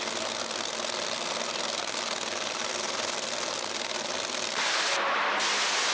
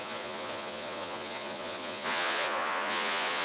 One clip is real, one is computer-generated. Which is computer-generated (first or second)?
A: second